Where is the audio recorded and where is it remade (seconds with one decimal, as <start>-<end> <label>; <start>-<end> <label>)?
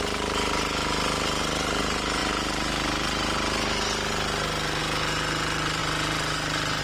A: 0.0-5.8 recorded; 5.8-6.8 remade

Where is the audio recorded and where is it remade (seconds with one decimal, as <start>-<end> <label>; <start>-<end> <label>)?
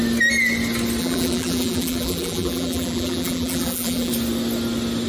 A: 0.0-1.0 recorded; 1.0-4.1 remade; 4.1-5.1 recorded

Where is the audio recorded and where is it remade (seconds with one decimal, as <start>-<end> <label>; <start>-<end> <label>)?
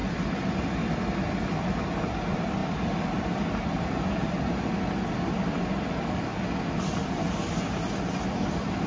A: 0.0-2.0 recorded; 2.0-6.3 remade; 6.3-6.8 recorded; 6.8-8.9 remade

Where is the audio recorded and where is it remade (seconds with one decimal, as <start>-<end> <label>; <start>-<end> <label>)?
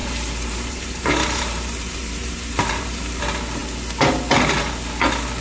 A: 0.0-3.2 remade; 3.2-5.4 recorded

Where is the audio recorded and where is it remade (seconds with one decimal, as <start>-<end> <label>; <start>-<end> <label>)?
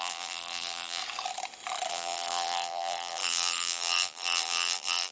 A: 0.0-1.0 remade; 1.0-1.9 recorded; 1.9-5.1 remade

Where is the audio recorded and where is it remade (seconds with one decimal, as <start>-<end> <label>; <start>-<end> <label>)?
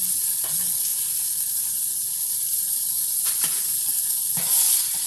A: 0.0-0.9 recorded; 0.9-3.7 remade; 3.7-5.1 recorded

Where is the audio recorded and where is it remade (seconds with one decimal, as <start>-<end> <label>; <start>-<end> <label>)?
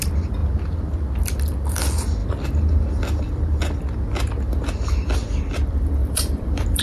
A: 0.0-6.0 recorded; 6.0-6.8 remade